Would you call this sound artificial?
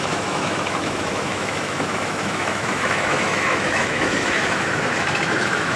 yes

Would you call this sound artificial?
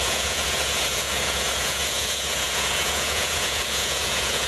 yes